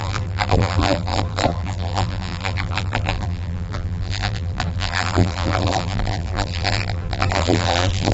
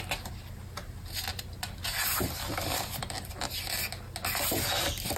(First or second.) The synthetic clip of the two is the first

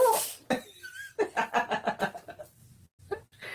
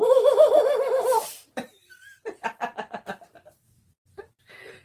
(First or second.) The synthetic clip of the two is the second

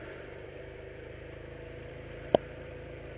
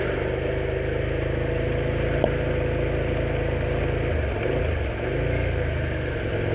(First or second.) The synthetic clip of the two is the first